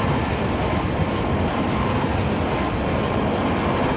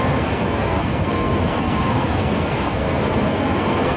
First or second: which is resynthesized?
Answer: second